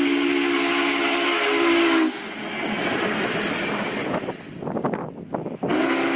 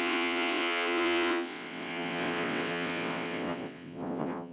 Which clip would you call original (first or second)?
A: first